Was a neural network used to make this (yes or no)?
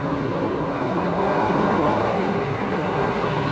yes